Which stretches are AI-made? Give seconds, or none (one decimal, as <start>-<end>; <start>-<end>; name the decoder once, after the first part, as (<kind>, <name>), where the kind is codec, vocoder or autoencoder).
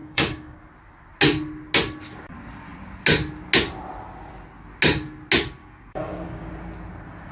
0.0-0.6 (codec, DAC); 5.6-6.5